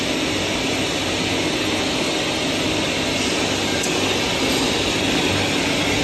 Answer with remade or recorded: recorded